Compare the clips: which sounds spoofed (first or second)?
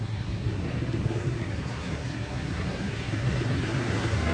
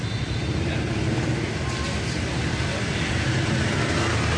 first